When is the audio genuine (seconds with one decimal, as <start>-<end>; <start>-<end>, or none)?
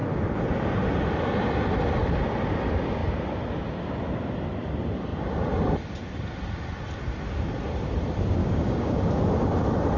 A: 0.0-8.4; 9.1-10.0